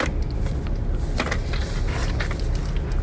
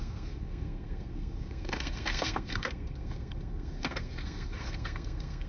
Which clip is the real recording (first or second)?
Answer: first